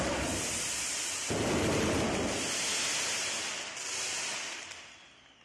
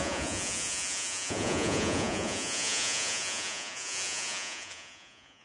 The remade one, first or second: second